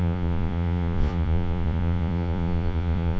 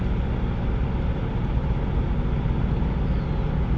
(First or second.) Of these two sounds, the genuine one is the second